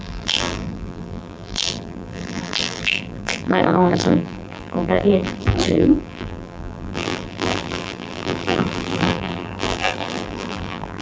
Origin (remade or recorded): remade